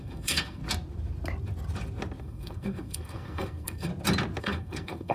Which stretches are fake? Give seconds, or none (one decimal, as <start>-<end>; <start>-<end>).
0.0-0.6; 2.2-3.9; 4.4-5.1